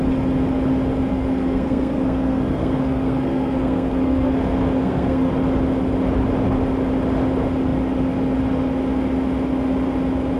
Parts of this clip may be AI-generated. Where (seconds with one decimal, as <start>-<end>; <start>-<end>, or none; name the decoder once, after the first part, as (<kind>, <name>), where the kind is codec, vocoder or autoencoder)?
1.1-5.3 (codec, SNAC)